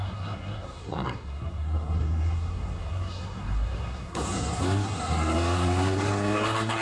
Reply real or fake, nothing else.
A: fake